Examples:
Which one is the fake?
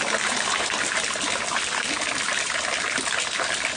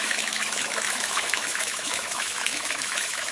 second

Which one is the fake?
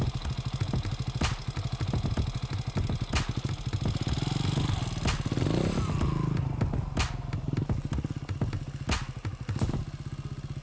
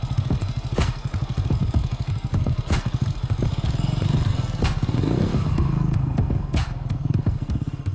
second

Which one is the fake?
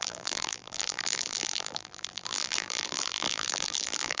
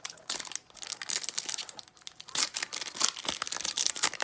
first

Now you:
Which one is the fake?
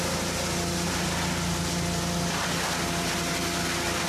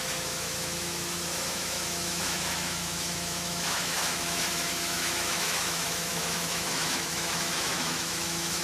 second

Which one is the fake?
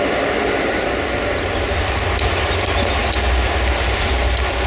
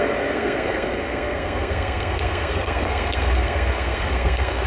second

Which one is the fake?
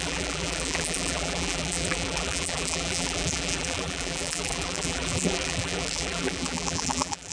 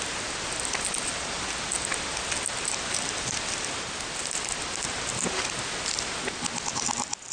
first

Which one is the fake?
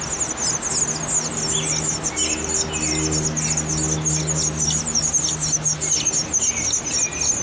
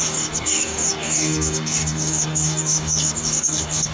second